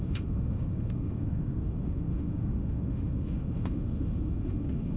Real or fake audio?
fake